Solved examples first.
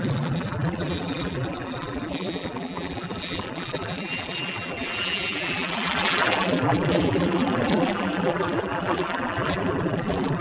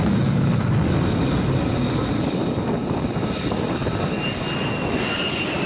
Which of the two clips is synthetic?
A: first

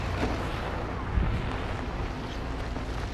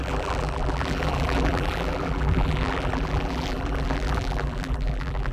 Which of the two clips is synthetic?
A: second